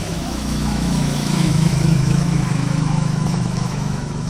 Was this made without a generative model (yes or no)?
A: no